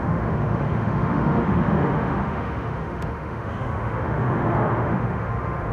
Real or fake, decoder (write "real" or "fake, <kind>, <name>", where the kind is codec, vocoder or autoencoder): fake, autoencoder, DAC-VAE